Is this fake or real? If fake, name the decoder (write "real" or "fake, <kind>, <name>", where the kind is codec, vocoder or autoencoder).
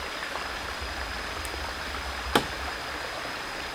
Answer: real